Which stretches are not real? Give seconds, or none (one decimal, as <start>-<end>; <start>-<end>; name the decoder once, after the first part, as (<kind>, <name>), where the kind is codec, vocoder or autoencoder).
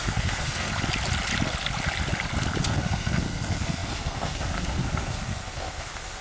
0.0-0.7 (codec, SNAC); 2.6-6.2